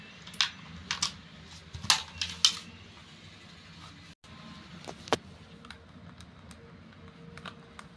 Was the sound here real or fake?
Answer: real